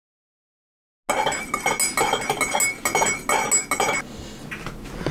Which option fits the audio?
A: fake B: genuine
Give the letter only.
B